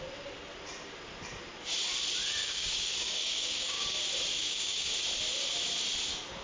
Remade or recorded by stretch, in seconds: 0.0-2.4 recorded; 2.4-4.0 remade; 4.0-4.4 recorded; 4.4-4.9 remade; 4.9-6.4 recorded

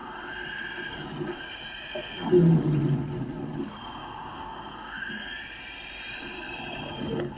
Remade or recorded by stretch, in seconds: 0.0-4.0 recorded; 4.0-5.1 remade; 5.1-7.4 recorded